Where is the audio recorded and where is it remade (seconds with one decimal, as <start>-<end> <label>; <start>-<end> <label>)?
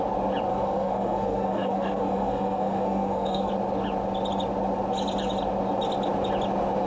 0.0-0.5 recorded; 0.5-3.5 remade; 3.5-6.9 recorded